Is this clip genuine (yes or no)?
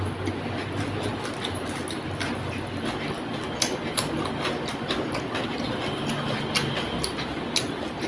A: yes